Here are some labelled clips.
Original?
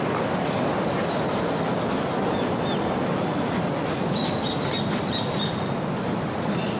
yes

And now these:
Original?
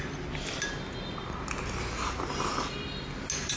yes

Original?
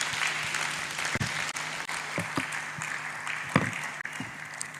yes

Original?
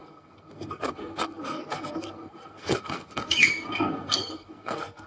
no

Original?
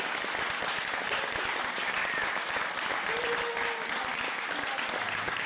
yes